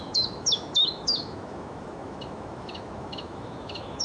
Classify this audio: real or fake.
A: fake